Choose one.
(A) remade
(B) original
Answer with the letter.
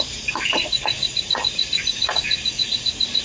B